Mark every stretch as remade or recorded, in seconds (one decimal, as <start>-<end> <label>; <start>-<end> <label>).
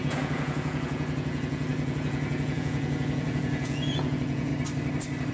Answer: 0.0-4.5 remade; 4.5-5.3 recorded